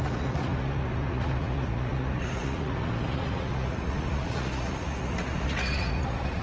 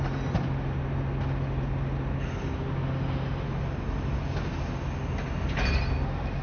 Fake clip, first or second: first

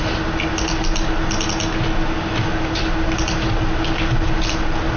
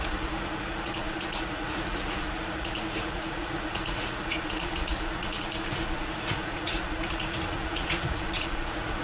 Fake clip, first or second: second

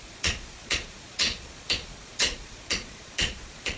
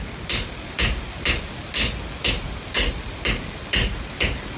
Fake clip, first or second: first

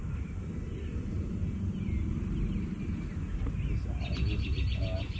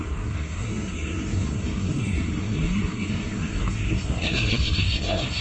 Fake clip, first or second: second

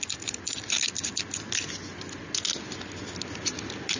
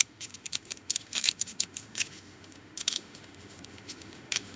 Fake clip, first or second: second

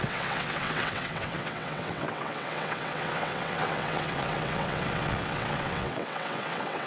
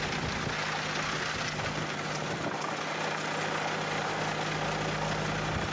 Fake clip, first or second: first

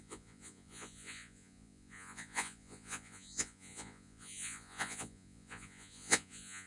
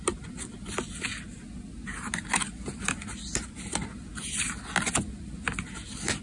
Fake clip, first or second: first